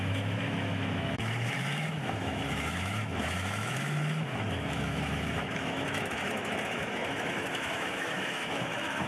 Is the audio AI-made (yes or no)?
yes